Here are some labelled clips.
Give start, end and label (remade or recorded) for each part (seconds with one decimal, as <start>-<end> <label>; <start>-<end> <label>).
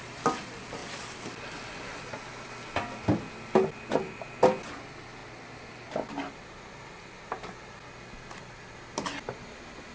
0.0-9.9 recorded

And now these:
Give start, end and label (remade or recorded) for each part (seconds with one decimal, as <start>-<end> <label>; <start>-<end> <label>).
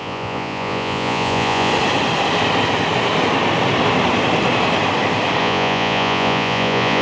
0.0-1.7 remade; 1.7-5.4 recorded; 5.4-7.0 remade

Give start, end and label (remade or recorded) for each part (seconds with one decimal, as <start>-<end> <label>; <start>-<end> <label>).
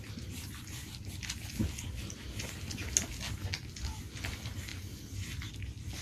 0.0-6.0 recorded